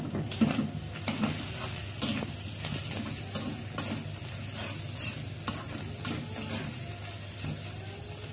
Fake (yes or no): no